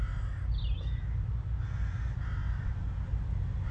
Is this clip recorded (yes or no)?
yes